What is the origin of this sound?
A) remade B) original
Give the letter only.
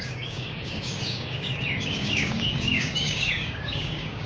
A